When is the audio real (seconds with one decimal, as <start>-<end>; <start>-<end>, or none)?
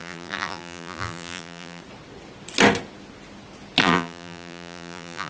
1.8-3.8